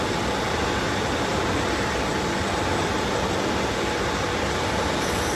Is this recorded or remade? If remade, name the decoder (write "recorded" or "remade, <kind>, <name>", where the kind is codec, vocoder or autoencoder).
recorded